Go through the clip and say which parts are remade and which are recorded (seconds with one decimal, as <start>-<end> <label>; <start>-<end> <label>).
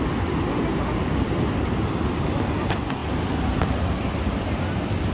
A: 0.0-5.1 recorded